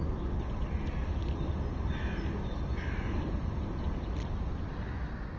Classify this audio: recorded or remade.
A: recorded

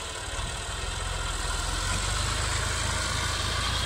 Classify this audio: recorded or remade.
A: recorded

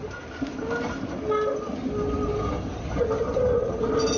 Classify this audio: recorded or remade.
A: recorded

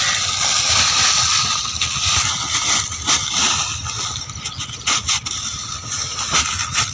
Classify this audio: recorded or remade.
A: recorded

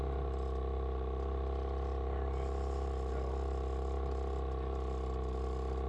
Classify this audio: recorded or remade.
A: recorded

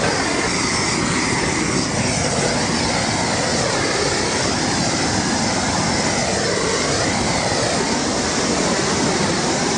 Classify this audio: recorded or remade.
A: recorded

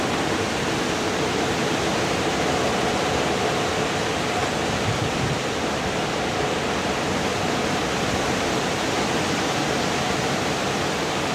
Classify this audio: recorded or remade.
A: remade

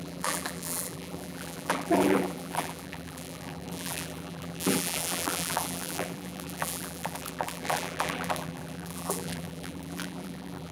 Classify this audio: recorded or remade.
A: remade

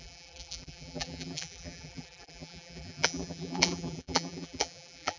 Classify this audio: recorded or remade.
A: remade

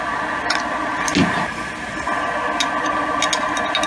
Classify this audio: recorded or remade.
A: recorded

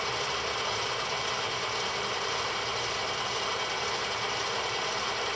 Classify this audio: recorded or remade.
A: remade